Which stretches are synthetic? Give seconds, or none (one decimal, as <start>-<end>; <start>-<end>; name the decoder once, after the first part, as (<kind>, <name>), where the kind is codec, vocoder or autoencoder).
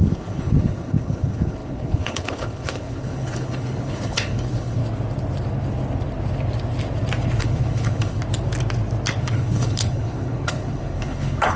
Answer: 0.0-4.8 (codec, HILCodec); 7.4-8.2; 9.2-11.6